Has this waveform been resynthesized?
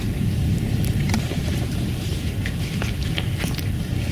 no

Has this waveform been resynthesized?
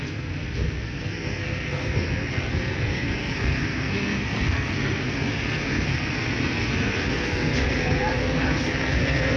yes